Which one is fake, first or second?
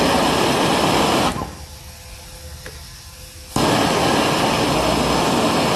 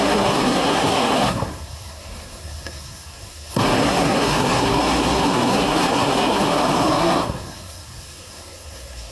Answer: second